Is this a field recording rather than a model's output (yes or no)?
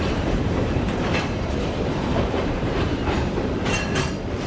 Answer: no